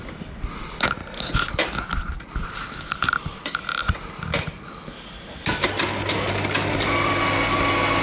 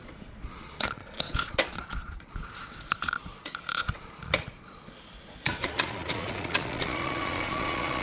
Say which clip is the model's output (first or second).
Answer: second